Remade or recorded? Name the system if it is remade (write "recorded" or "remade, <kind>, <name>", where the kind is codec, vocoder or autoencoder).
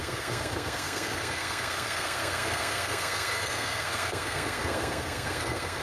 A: remade, codec, SNAC